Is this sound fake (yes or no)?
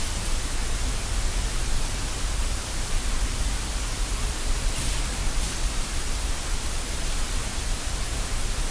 no